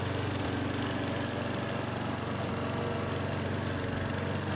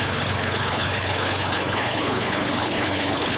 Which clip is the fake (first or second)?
second